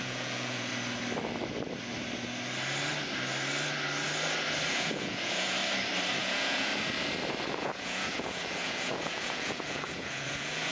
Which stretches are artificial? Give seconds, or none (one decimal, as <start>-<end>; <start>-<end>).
0.0-0.7; 4.7-5.6; 6.2-6.7; 7.5-10.7